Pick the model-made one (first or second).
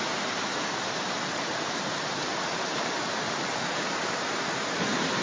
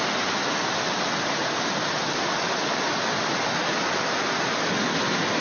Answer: first